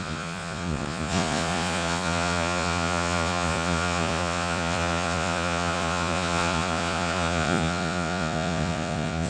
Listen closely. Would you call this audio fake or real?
fake